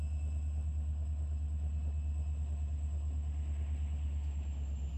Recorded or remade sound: recorded